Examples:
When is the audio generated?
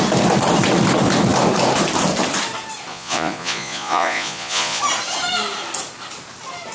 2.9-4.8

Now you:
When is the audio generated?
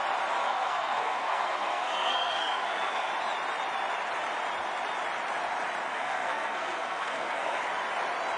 0.4-3.1; 5.9-7.6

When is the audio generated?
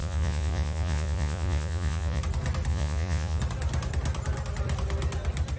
0.0-2.2; 2.7-3.4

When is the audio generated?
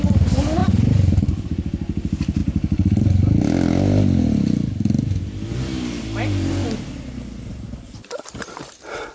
none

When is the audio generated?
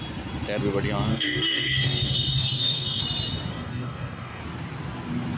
1.1-3.0; 3.5-4.4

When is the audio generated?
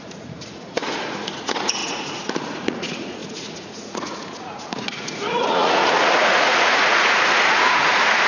0.0-8.3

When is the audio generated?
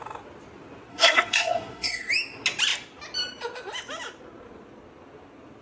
0.9-2.1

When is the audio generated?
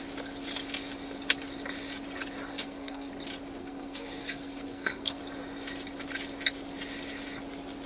2.5-3.1; 3.6-5.2